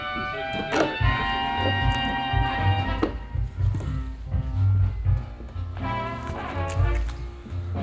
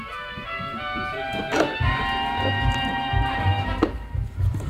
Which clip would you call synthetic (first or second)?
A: second